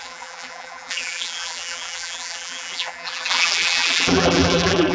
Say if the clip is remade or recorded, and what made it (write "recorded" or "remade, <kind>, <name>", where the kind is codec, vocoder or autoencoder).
remade, vocoder, BigVGAN v2